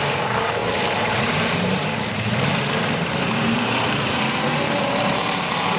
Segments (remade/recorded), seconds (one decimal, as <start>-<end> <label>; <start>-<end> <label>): 0.0-5.8 remade

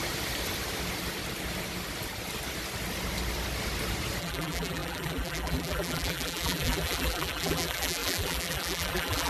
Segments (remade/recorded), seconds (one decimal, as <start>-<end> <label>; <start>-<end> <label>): 0.0-4.2 recorded; 4.2-9.3 remade

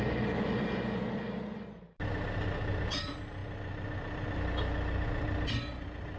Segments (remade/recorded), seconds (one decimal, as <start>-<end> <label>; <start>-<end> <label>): 0.0-6.2 recorded

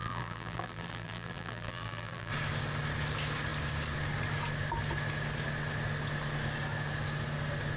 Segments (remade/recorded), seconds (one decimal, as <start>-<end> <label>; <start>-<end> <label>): 0.0-2.3 remade; 2.3-7.8 recorded

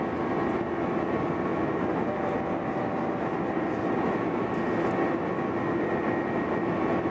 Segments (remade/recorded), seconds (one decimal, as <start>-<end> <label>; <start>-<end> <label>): 0.0-7.1 recorded

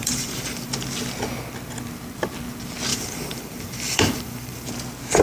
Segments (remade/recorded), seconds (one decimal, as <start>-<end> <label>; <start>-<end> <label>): 0.0-0.7 remade; 0.7-2.9 recorded; 2.9-4.7 remade; 4.7-5.2 recorded